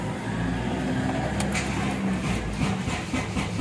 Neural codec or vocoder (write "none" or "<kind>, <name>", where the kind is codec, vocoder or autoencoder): none